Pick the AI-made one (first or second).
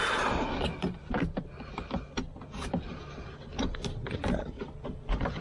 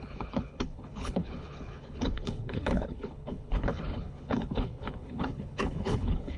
second